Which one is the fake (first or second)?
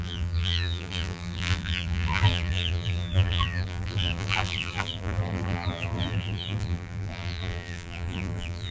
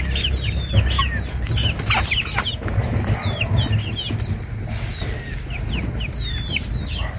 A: first